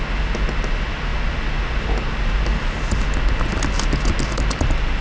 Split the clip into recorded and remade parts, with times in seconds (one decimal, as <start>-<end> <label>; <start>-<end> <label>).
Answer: 0.0-5.0 recorded